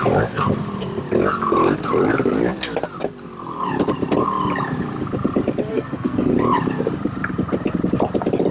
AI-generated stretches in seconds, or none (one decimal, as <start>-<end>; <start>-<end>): 5.7-6.3